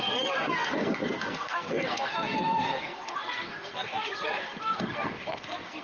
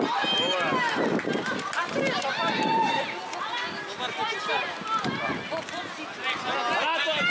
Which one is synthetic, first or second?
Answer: first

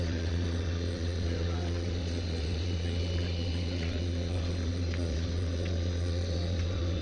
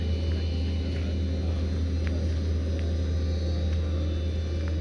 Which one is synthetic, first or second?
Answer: first